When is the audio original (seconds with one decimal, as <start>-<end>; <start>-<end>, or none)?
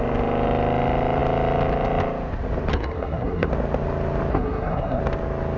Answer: 0.0-2.7; 3.5-4.3; 5.0-5.6